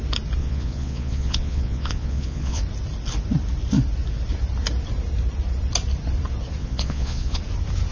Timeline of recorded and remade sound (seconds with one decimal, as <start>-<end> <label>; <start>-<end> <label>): 0.0-0.4 recorded; 0.4-2.6 remade; 2.6-6.6 recorded; 6.6-7.4 remade; 7.4-7.9 recorded